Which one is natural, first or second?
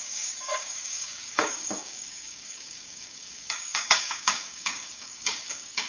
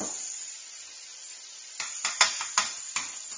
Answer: second